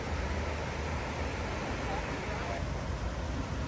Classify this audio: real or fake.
real